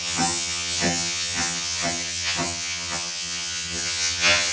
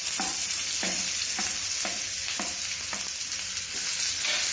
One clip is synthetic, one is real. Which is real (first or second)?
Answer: second